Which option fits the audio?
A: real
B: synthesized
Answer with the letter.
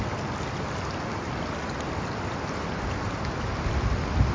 A